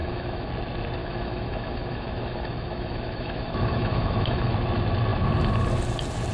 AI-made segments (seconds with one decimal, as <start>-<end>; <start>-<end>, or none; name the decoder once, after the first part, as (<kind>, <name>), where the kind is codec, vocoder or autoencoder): 0.0-0.5 (autoencoder, DAC-VAE); 1.0-4.5